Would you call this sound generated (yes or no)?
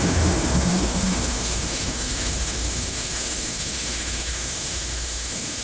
yes